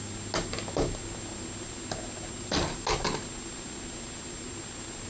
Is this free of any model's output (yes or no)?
yes